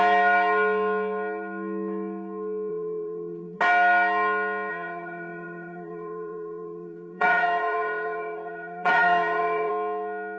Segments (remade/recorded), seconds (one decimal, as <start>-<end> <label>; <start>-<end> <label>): 0.0-2.7 recorded; 2.7-3.6 remade; 3.6-4.7 recorded; 4.7-9.7 remade; 9.7-10.4 recorded